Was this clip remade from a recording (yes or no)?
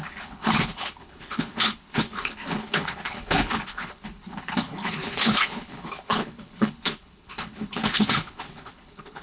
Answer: yes